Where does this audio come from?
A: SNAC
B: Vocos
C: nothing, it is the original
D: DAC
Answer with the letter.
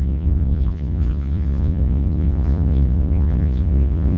B